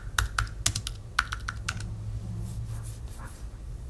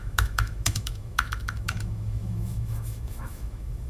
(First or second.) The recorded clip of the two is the first